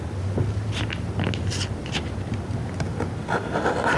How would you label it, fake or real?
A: real